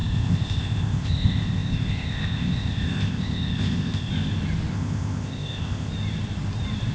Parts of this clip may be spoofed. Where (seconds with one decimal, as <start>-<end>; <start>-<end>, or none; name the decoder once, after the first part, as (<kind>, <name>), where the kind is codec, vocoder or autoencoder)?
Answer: 0.0-4.1 (codec, ZipCodec); 4.7-5.9